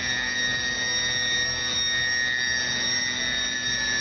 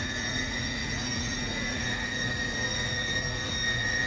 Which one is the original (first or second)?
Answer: first